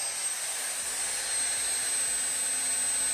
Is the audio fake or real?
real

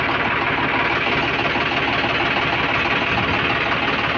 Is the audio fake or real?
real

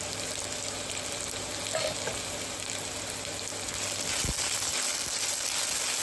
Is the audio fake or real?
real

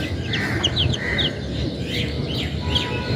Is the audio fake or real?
real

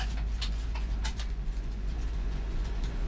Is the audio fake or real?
fake